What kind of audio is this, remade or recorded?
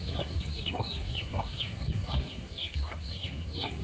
remade